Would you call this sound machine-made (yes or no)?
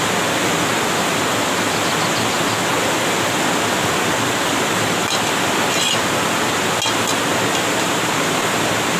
no